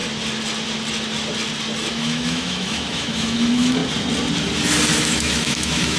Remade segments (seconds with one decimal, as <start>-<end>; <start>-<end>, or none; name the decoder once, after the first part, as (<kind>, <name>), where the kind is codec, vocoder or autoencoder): 1.9-3.8 (autoencoder, DAC-VAE); 5.0-6.0